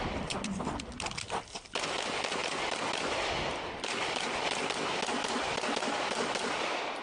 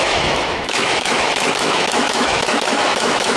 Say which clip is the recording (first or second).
first